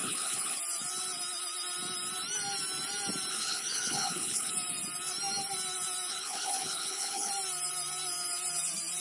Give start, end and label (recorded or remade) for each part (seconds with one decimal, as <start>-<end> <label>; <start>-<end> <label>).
0.0-0.6 remade; 0.6-3.3 recorded; 3.3-4.5 remade; 4.5-6.1 recorded; 6.1-7.3 remade; 7.3-9.0 recorded